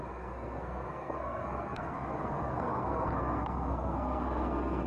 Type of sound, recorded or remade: remade